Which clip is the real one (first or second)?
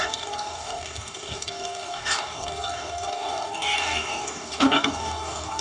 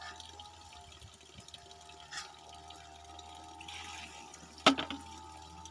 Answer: second